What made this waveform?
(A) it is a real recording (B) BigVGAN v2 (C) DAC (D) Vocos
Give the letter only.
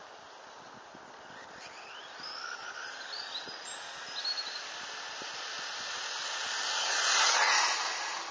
A